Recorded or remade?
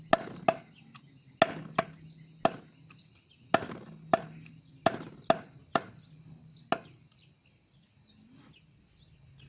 recorded